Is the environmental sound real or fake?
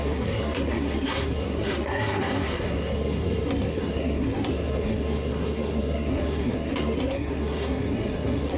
fake